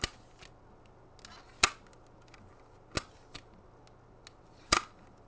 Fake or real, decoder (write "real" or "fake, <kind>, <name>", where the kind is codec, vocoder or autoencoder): real